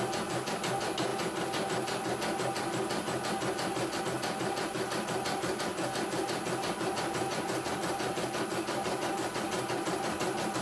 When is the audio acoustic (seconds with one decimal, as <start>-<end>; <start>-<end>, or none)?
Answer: 0.0-10.6